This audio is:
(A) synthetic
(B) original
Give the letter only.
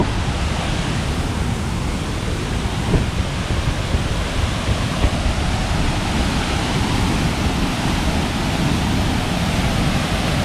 B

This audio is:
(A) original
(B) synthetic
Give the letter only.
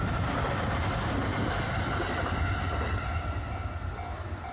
A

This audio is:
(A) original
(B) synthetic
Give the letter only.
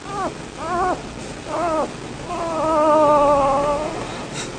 A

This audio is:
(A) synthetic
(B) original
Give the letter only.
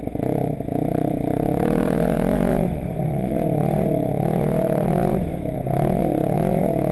A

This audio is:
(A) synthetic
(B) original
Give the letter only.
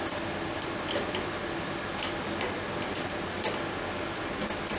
B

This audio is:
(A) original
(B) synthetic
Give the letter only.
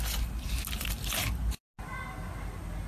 A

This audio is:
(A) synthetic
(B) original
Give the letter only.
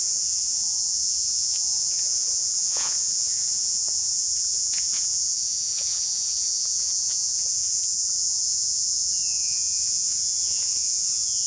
A